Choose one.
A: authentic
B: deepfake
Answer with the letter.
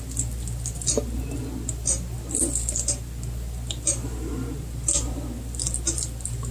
A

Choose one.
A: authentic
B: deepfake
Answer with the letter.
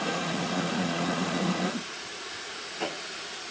B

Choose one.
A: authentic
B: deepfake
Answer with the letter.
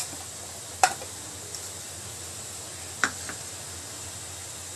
A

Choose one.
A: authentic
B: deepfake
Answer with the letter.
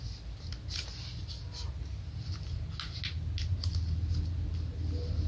A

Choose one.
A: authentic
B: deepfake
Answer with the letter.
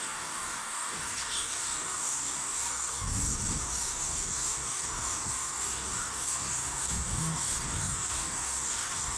B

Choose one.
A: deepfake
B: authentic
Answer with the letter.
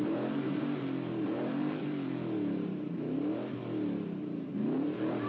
A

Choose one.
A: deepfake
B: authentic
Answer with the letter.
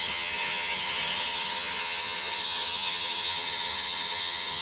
A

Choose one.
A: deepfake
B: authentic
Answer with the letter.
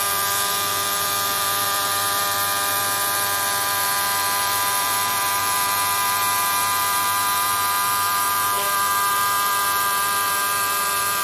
A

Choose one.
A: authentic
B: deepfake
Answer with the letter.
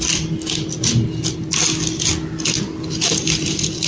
A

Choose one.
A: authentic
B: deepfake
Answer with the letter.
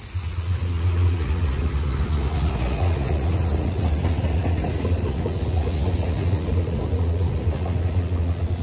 B